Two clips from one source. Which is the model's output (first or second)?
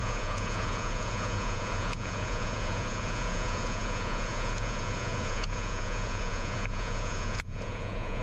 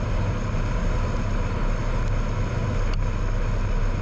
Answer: first